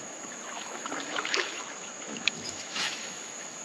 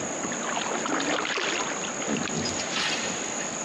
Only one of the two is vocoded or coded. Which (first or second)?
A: first